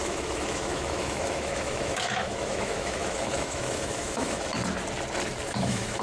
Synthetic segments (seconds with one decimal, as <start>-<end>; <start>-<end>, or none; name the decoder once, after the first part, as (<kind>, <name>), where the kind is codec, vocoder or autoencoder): 0.0-4.5 (autoencoder, DAC-VAE); 5.6-6.0